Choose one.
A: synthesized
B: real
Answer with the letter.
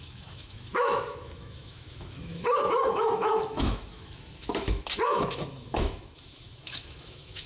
A